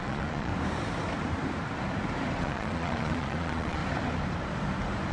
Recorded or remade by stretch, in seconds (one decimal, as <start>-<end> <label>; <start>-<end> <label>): 0.0-0.5 remade; 0.5-2.4 recorded; 2.4-3.8 remade; 3.8-5.1 recorded